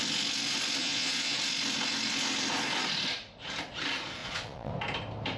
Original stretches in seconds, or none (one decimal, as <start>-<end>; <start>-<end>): 0.0-0.8; 1.4-4.2; 4.7-5.4